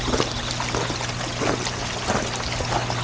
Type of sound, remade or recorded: recorded